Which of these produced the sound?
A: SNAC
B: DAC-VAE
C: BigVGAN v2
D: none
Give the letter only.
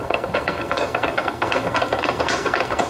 A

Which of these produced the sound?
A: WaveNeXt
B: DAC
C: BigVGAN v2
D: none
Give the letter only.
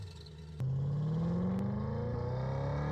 D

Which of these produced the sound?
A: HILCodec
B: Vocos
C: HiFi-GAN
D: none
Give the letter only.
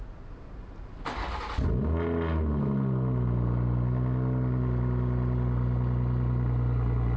D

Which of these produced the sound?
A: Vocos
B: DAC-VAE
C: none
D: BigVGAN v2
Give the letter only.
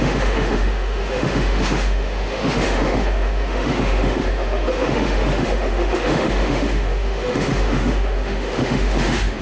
B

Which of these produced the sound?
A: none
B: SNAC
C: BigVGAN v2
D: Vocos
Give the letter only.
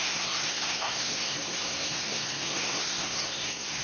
B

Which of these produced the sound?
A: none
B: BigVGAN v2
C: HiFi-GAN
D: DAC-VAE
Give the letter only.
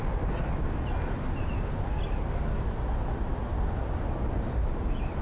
A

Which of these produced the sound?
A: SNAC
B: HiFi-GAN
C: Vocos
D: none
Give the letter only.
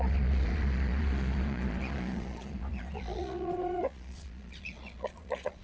C